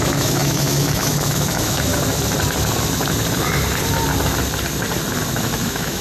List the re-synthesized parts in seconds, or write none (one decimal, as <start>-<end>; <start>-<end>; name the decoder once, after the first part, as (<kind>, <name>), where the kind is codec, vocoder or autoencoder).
0.0-1.9 (autoencoder, DAC-VAE); 5.3-6.0